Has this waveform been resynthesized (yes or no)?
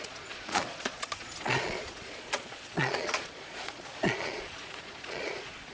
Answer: yes